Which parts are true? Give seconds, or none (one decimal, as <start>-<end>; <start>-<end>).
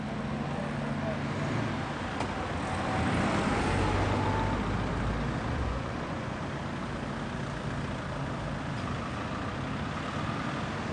0.0-5.5; 6.4-10.9